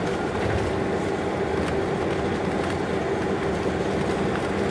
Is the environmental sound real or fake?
real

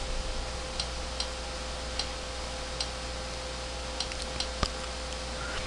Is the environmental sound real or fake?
real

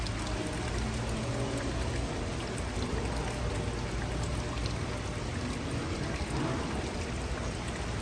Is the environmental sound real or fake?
real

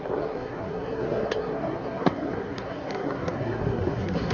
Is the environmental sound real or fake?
fake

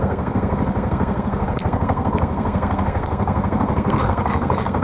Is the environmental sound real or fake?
fake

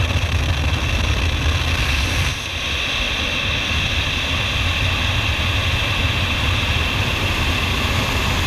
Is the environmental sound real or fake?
real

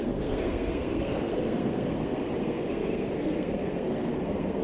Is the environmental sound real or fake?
fake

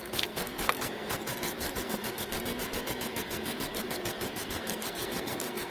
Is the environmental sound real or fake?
fake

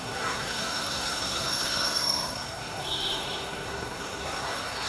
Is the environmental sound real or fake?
fake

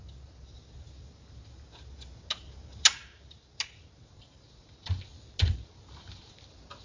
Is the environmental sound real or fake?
real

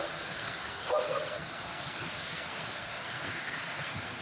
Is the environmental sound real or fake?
fake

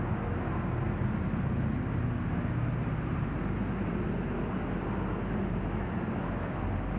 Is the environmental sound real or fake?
real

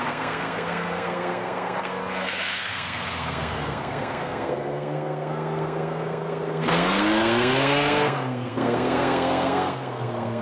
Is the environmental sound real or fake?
fake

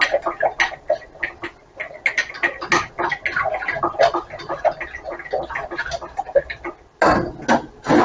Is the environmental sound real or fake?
real